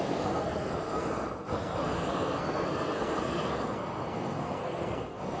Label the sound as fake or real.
fake